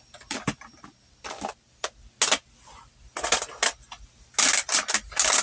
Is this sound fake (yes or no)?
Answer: no